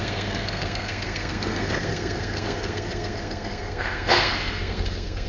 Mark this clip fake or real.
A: fake